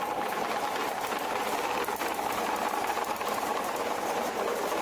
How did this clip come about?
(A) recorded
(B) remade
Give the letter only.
B